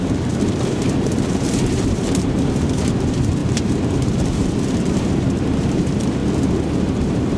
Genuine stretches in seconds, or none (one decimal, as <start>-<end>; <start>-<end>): 6.2-6.8

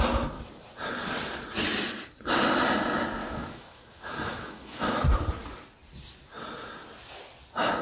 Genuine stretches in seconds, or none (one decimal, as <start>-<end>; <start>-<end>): 0.0-3.2; 5.0-7.8

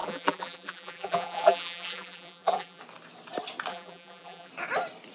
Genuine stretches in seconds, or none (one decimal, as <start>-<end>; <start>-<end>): 2.8-3.7; 4.5-5.1

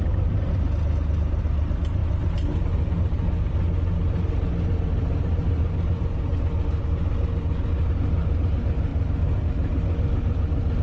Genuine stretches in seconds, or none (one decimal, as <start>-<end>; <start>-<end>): 0.0-10.8

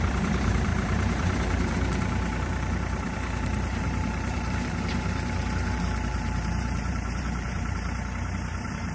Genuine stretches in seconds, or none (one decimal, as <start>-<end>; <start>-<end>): none

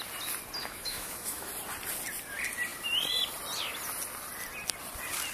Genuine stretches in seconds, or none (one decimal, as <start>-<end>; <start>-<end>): 0.0-0.6; 1.5-5.3

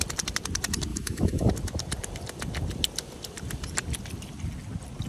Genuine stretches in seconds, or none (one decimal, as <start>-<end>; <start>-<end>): 0.0-0.9; 1.5-5.1